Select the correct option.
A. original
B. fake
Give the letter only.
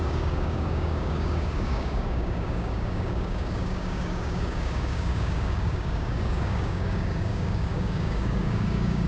B